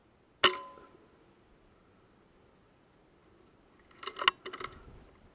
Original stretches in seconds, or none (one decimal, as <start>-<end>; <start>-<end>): 0.0-5.3